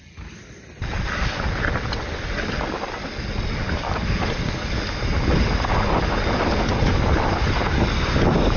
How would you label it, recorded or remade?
recorded